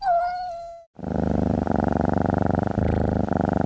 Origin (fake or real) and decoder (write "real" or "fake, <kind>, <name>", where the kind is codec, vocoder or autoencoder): real